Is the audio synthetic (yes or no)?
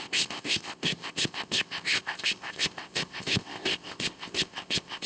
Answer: yes